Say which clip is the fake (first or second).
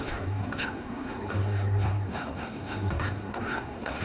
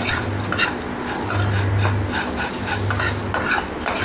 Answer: first